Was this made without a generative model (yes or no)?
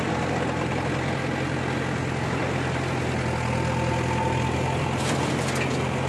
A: yes